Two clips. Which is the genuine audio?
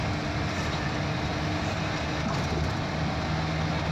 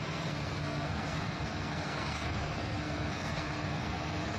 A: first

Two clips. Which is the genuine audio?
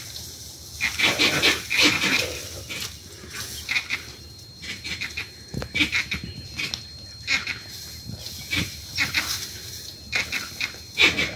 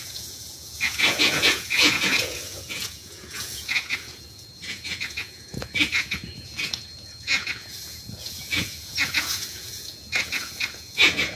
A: first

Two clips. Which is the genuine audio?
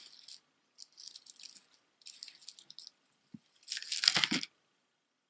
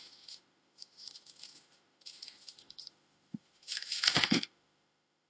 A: first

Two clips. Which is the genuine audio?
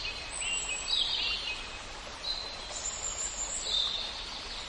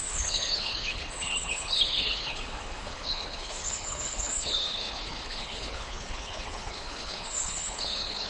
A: first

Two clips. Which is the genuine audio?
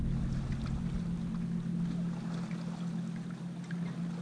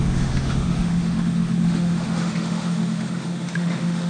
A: first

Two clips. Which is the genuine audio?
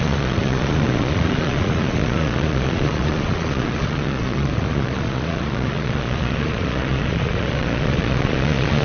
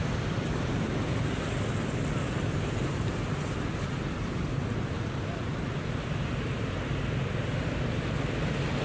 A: second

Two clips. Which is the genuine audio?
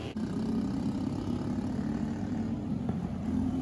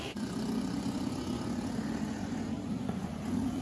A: first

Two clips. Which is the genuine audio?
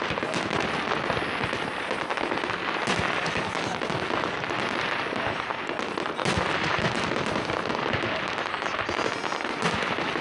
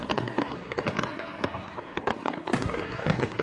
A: first